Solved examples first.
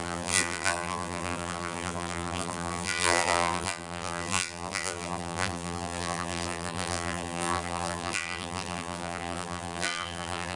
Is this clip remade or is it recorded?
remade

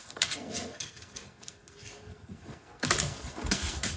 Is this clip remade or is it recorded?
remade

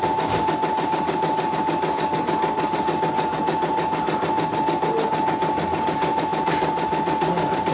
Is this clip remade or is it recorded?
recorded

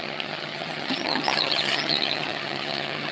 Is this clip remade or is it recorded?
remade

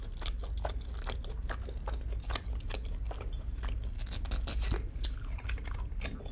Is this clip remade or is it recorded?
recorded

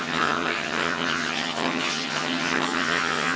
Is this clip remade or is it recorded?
remade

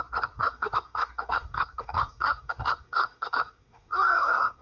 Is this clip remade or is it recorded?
remade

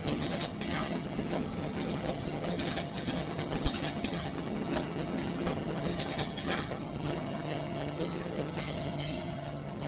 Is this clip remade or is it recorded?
remade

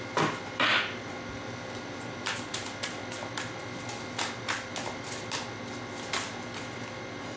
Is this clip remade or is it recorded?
remade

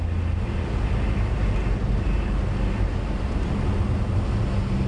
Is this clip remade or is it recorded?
recorded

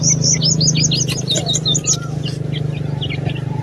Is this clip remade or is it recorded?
recorded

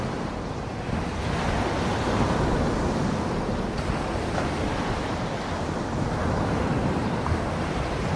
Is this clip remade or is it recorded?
remade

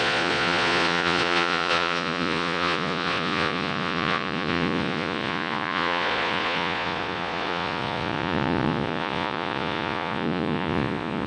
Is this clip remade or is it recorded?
remade